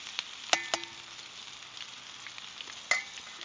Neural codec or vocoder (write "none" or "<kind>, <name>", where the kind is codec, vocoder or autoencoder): none